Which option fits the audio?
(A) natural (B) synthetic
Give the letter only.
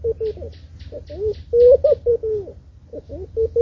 A